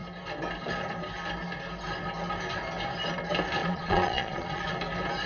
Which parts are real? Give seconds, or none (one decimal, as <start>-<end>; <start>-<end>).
0.0-3.6; 4.7-5.3